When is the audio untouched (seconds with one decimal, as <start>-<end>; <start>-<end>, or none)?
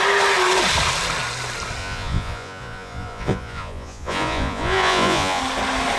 0.0-1.8; 5.4-6.0